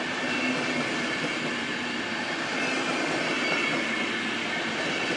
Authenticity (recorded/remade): recorded